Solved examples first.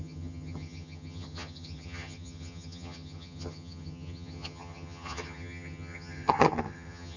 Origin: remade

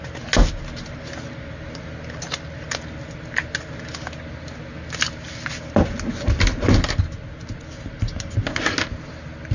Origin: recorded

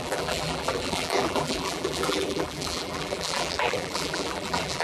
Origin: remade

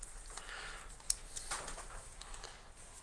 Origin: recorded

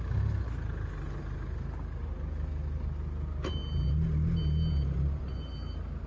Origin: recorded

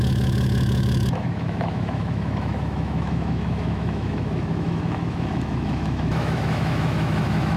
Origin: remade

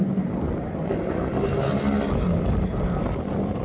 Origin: recorded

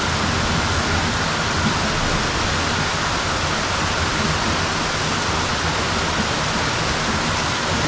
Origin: recorded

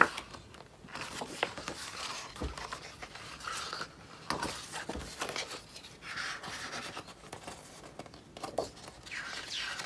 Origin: recorded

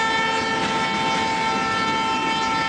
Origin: recorded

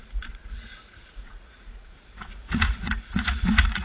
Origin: remade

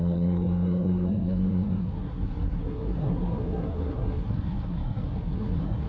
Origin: remade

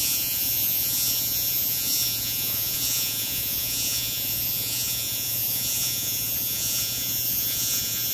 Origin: remade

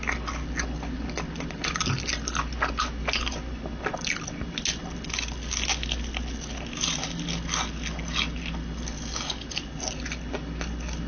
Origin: recorded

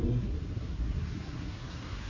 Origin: remade